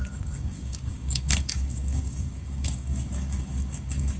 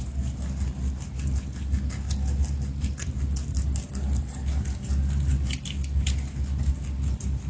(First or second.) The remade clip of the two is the first